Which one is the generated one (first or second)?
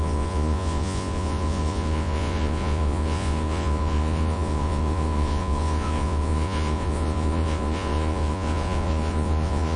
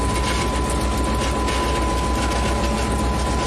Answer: first